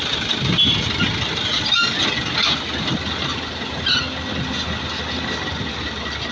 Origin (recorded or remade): recorded